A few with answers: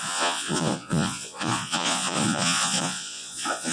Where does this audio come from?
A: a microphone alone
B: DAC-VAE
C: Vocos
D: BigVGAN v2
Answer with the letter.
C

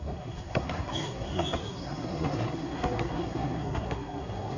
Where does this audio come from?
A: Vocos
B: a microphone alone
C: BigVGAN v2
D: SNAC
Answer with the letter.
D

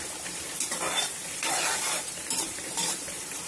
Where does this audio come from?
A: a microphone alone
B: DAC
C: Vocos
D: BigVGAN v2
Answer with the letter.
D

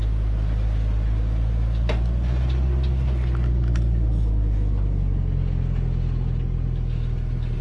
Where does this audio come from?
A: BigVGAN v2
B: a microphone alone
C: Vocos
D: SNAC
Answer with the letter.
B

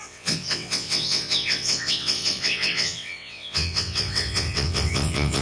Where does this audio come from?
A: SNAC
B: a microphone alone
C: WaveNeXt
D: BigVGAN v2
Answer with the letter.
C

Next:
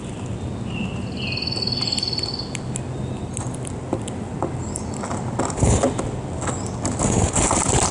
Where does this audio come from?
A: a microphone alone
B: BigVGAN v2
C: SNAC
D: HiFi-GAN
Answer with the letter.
A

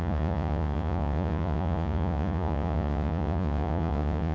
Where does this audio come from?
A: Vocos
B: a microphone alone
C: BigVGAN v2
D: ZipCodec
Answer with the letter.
A